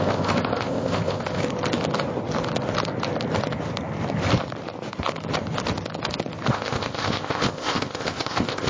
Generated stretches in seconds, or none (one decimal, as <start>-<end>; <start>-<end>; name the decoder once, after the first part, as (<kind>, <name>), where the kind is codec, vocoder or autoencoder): 0.0-1.4 (codec, ZipCodec); 6.5-8.7